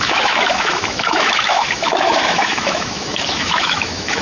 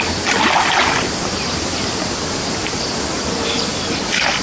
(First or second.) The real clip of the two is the second